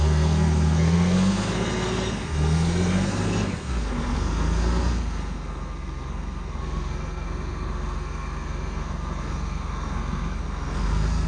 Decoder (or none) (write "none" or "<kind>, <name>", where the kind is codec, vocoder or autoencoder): codec, SNAC